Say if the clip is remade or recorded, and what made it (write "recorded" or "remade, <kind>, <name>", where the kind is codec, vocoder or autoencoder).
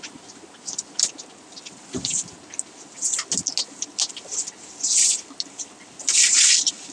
recorded